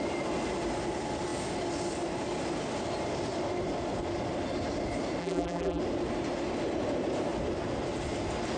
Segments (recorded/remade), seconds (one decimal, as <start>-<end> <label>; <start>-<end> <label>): 0.0-5.2 recorded; 5.2-5.8 remade; 5.8-8.6 recorded